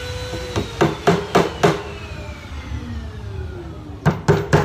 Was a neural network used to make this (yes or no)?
no